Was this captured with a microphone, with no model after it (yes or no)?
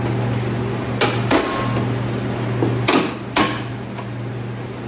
yes